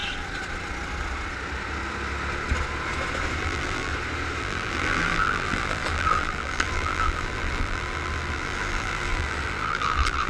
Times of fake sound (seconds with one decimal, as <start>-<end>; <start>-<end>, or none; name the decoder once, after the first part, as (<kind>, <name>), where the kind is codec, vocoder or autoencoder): 3.4-3.9 (vocoder, BigVGAN v2); 4.4-10.3